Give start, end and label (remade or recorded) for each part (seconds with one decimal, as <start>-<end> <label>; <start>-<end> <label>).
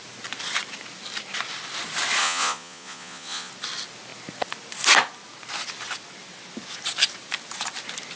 0.0-2.2 recorded; 2.2-3.5 remade; 3.5-8.2 recorded